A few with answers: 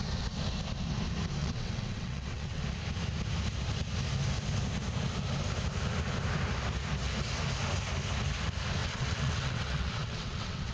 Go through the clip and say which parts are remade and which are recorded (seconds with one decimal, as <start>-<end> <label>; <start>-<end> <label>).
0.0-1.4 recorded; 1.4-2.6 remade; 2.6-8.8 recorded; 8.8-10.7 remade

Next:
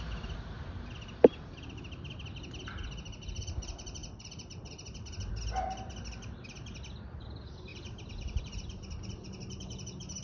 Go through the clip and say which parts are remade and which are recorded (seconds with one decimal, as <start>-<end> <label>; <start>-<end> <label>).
0.0-10.2 recorded

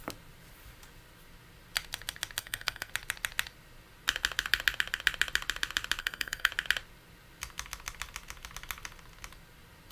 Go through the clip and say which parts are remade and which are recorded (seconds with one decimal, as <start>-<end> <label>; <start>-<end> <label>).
0.0-2.4 recorded; 2.4-2.9 remade; 2.9-6.0 recorded; 6.0-6.5 remade; 6.5-9.9 recorded